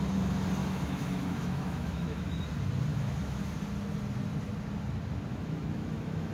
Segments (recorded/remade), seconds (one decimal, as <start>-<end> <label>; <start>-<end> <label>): 0.0-0.6 recorded; 0.6-2.4 remade; 2.4-2.9 recorded; 2.9-3.5 remade; 3.5-5.3 recorded; 5.3-6.3 remade